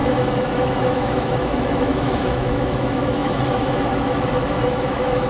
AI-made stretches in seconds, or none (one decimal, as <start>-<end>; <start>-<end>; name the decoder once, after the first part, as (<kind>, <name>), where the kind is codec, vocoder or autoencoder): 0.0-5.3 (autoencoder, DAC-VAE)